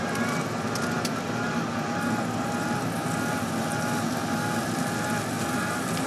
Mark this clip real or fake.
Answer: real